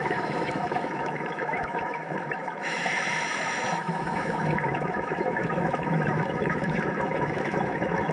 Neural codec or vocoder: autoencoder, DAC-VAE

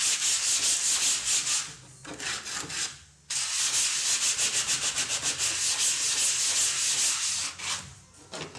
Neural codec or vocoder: none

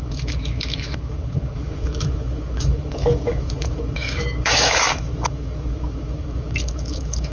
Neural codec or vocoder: autoencoder, DAC-VAE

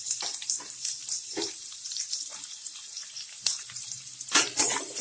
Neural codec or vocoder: vocoder, BigVGAN v2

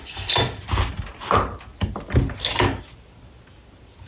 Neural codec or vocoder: none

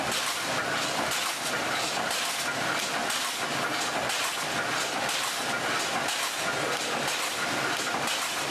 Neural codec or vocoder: none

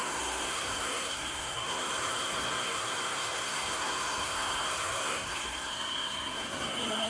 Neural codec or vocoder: codec, SNAC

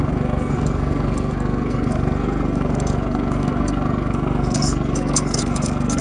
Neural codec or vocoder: codec, SNAC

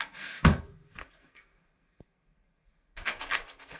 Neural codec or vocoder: codec, SNAC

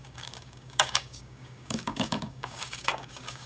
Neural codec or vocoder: codec, DAC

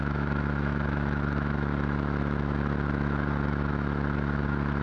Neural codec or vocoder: autoencoder, DAC-VAE